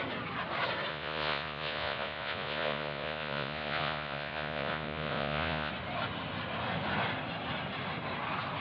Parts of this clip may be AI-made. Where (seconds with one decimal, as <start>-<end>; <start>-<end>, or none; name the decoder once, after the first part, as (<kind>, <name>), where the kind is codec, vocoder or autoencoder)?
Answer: 0.9-5.7 (vocoder, Vocos)